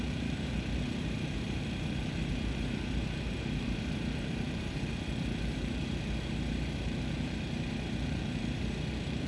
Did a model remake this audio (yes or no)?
yes